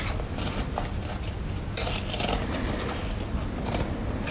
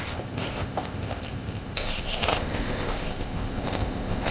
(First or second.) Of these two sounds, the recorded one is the first